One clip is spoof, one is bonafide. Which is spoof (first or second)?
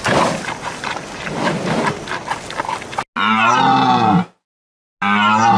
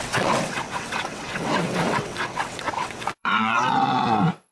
second